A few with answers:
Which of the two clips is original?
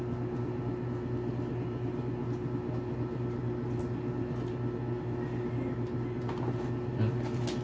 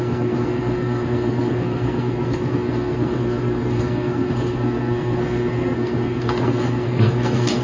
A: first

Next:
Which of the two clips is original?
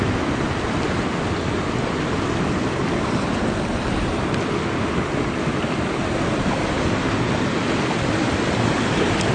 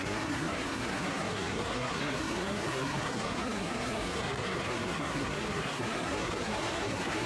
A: first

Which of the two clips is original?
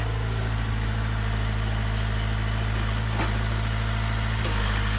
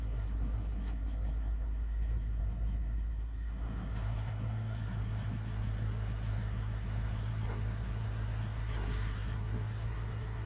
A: first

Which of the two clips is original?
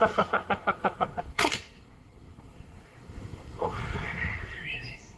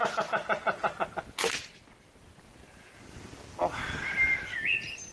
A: second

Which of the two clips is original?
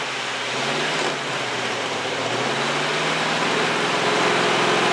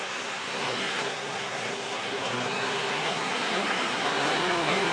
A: first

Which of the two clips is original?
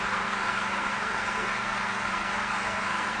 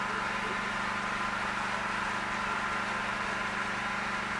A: second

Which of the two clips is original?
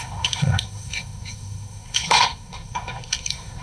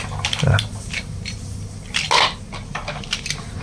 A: second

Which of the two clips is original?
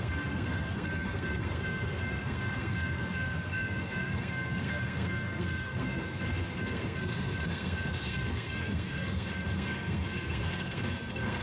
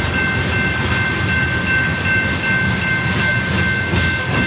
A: second